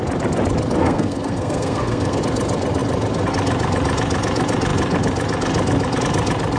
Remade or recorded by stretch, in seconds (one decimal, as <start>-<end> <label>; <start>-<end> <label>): 0.0-0.8 recorded; 0.8-2.2 remade; 2.2-6.6 recorded